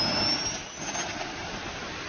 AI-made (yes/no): no